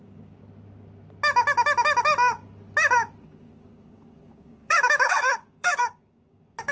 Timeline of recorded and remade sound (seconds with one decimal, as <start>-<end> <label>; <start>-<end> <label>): 0.0-0.4 remade; 0.4-3.2 recorded; 3.2-6.7 remade